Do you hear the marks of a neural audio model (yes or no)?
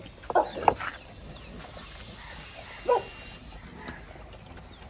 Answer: no